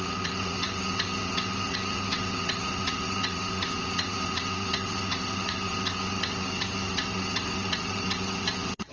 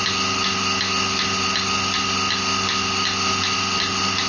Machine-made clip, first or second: first